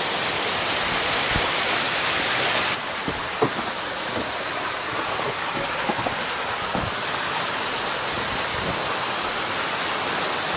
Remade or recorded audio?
recorded